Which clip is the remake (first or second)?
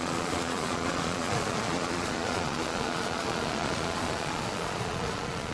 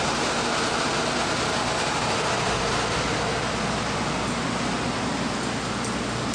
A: first